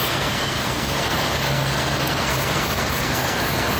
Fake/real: fake